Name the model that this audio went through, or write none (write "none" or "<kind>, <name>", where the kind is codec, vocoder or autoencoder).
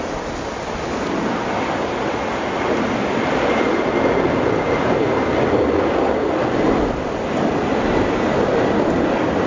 none